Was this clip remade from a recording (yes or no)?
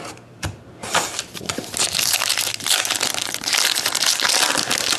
no